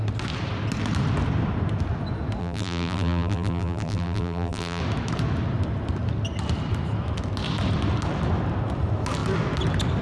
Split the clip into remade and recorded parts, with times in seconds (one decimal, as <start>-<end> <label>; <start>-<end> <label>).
0.0-2.4 recorded; 2.4-4.8 remade; 4.8-10.0 recorded